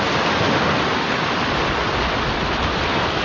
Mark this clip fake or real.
real